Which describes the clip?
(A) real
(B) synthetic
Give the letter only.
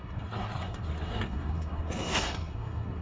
B